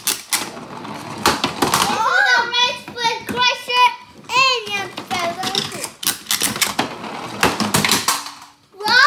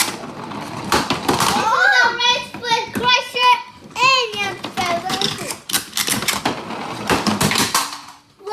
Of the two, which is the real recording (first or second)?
first